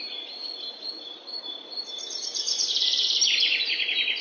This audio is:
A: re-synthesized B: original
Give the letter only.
A